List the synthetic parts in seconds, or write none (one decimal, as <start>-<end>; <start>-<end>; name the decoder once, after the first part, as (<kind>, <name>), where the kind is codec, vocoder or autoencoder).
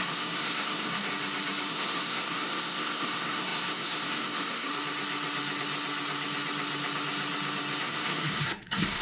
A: 0.0-1.1 (codec, SNAC); 1.7-4.7; 7.8-9.0